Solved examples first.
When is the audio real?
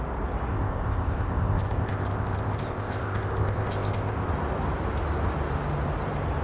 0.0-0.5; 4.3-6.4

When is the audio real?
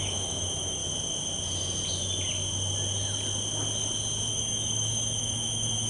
0.8-4.3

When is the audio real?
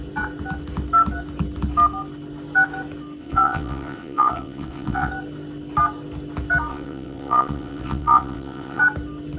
0.0-3.2; 5.1-6.7; 8.8-9.4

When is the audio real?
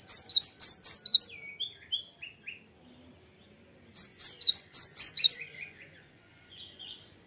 0.0-4.1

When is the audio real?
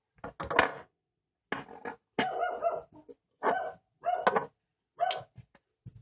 0.0-0.7; 1.4-6.0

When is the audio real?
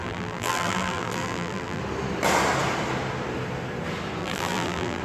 1.8-4.2